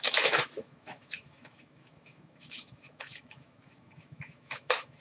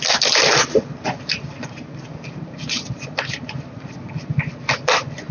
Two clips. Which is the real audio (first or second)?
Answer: second